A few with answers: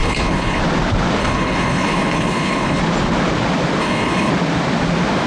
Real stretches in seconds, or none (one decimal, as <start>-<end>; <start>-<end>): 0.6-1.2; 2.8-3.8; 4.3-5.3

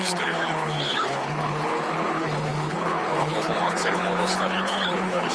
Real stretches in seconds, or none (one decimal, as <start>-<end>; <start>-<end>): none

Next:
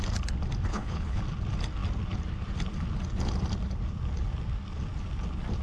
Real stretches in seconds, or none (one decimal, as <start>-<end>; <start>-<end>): 0.0-0.7; 1.2-5.6